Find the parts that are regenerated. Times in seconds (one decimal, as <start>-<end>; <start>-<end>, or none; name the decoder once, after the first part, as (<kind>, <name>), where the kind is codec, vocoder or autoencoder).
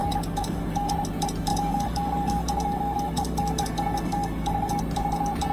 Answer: 0.0-0.9 (codec, DAC); 1.5-4.8